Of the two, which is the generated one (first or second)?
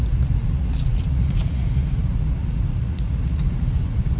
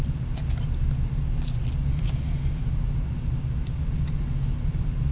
first